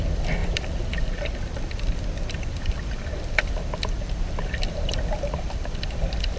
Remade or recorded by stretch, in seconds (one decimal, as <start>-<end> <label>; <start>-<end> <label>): 0.0-6.4 remade